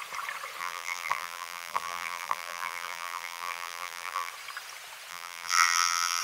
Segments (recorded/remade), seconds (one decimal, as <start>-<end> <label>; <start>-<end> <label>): 0.0-0.6 recorded; 0.6-4.3 remade; 4.3-5.1 recorded; 5.1-6.2 remade